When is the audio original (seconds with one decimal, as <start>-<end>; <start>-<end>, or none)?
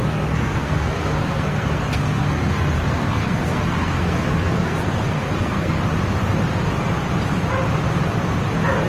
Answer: 5.8-8.9